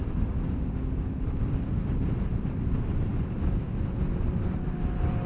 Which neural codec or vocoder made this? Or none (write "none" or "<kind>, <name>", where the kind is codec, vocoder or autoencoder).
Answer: none